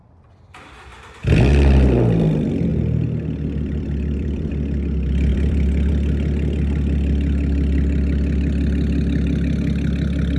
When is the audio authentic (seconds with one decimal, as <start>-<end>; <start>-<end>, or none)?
0.0-2.7; 4.5-5.3; 5.9-10.4